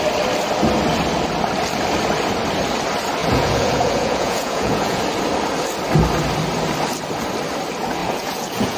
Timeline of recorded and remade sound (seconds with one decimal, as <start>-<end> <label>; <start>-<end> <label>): 0.0-3.2 recorded; 3.2-5.0 remade; 5.0-8.0 recorded; 8.0-8.8 remade